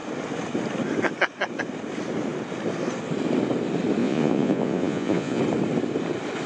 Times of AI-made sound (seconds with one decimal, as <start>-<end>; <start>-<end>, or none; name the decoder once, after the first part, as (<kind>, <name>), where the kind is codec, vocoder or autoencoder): 4.0-5.4 (vocoder, Vocos)